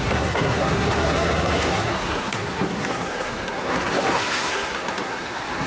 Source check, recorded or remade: remade